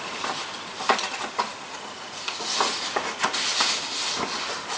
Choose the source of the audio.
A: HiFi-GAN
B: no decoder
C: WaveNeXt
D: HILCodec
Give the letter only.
B